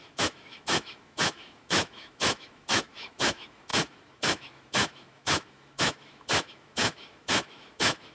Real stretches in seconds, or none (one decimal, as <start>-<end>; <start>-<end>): none